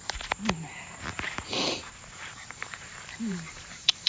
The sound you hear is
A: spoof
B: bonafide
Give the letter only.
A